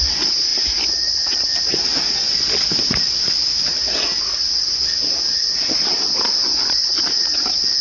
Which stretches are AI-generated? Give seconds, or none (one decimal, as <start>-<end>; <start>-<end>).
none